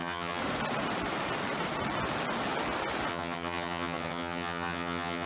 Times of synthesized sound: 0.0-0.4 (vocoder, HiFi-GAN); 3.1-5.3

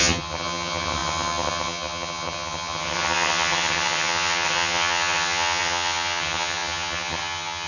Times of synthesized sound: 0.0-7.7 (vocoder, HiFi-GAN)